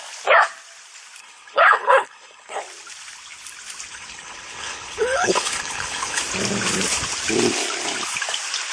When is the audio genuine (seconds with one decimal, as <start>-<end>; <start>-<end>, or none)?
0.0-1.2; 2.6-3.9; 6.2-8.7